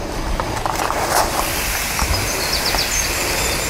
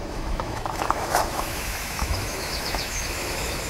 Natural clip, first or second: first